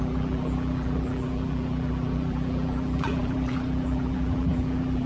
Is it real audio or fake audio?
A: fake